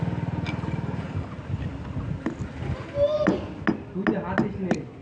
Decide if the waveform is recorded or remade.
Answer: recorded